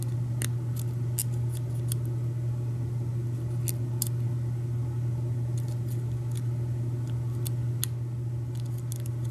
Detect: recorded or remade recorded